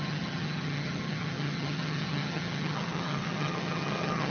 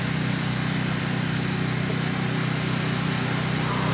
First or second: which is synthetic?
first